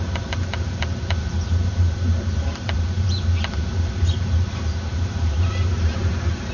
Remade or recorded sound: remade